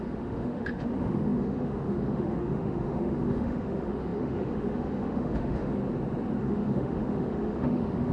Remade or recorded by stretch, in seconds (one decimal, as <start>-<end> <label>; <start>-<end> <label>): 0.0-5.8 remade; 5.8-6.4 recorded; 6.4-8.1 remade